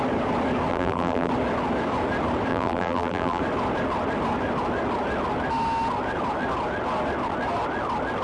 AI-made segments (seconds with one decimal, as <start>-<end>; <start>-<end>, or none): 0.7-1.3; 2.5-3.4